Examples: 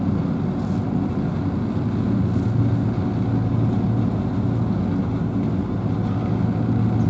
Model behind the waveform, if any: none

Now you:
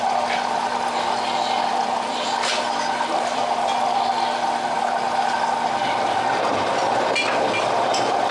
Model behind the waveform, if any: none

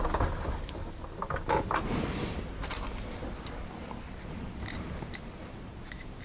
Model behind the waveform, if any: none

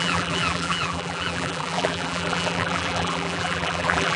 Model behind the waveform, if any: vocoder, BigVGAN v2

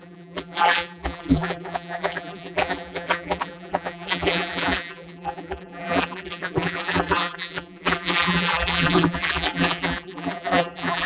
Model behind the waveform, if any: vocoder, BigVGAN v2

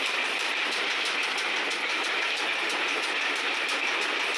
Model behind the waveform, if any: vocoder, BigVGAN v2